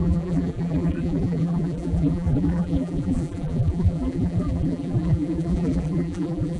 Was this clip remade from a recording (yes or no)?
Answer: yes